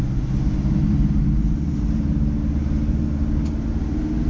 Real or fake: real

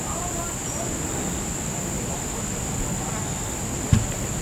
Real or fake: real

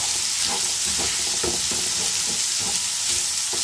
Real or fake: real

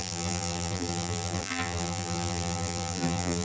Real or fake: fake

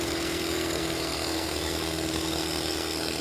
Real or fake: fake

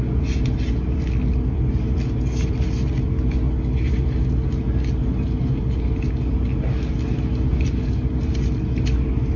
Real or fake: real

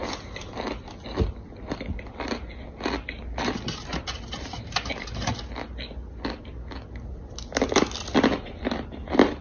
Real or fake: real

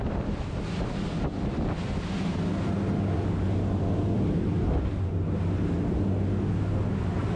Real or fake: real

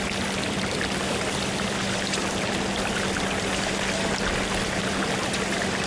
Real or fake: real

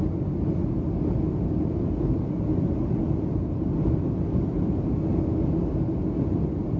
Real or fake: real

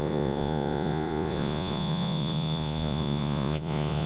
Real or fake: fake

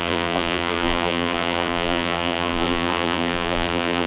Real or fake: fake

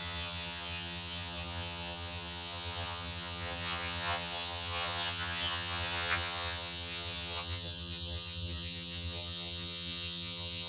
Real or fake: fake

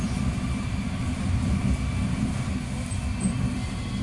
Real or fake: real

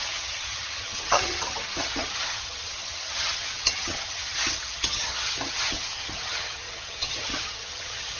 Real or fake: fake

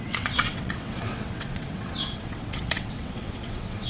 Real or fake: fake